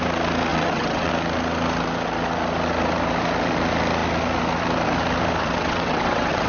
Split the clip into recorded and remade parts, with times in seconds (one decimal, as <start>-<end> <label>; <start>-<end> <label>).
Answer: 0.0-0.5 recorded; 0.5-1.1 remade; 1.1-5.4 recorded; 5.4-6.5 remade

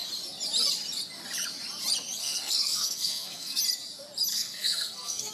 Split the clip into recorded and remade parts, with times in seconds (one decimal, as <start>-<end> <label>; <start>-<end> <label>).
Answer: 0.0-2.2 recorded; 2.2-3.6 remade; 3.6-4.3 recorded; 4.3-5.3 remade

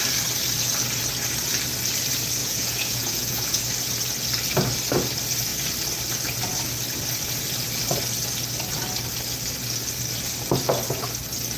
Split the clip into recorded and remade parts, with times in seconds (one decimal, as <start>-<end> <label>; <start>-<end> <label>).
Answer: 0.0-2.4 recorded; 2.4-3.6 remade; 3.6-11.6 recorded